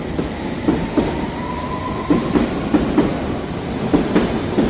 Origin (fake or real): real